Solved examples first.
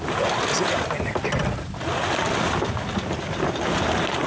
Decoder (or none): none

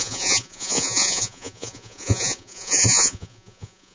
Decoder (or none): vocoder, Vocos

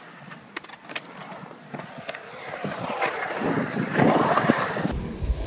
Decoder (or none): none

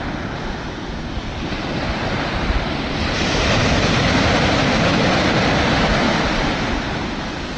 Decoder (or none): none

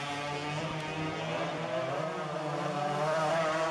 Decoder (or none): none